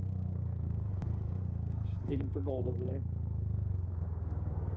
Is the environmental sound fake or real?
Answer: fake